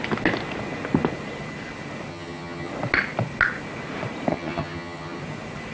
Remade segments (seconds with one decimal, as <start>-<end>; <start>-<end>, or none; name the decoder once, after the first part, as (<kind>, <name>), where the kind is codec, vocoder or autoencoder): 2.1-2.7 (vocoder, HiFi-GAN); 4.3-5.2